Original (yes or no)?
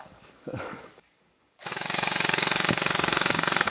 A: no